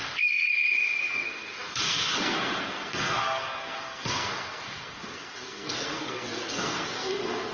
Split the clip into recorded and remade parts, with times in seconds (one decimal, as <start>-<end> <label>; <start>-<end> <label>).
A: 0.0-0.5 remade; 0.5-1.1 recorded; 1.1-7.5 remade